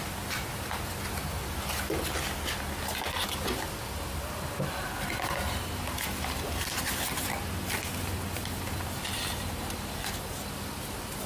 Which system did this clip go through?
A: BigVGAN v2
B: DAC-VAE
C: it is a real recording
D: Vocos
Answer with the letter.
C